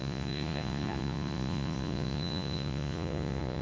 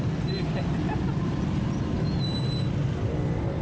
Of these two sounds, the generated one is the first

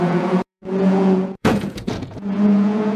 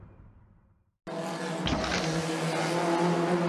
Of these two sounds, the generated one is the first